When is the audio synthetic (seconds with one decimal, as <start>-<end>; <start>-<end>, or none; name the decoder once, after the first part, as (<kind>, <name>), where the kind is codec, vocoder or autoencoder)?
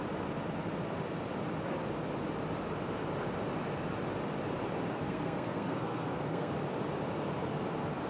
4.9-6.5 (codec, SNAC)